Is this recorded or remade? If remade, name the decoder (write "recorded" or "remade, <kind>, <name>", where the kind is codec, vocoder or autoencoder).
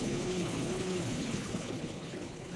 remade, codec, HILCodec